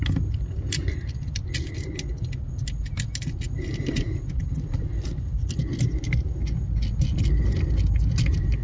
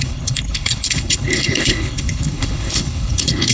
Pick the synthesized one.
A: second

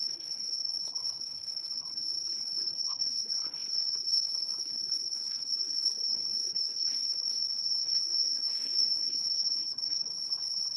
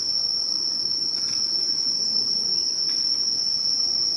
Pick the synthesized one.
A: first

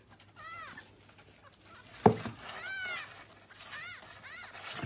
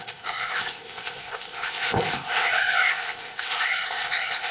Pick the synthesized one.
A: second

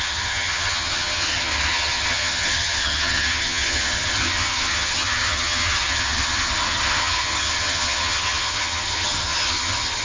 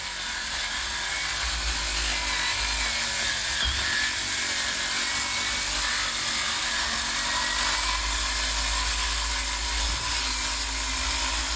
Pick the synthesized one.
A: first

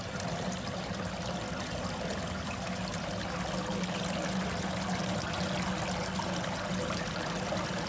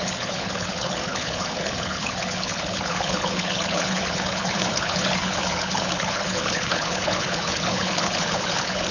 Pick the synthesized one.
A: second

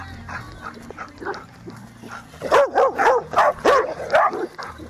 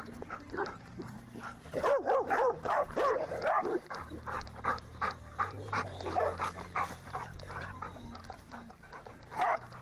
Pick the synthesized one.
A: second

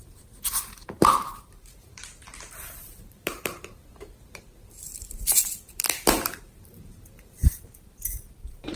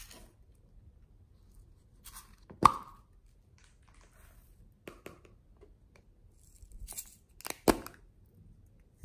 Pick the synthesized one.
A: first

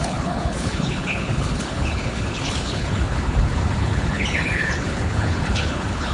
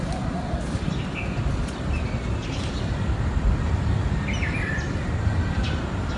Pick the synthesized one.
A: first